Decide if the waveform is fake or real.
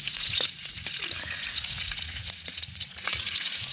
fake